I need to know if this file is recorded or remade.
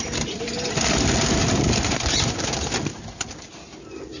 remade